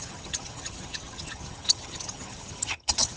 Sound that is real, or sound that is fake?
fake